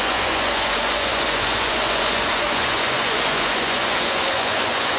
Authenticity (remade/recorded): remade